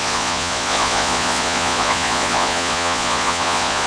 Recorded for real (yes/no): no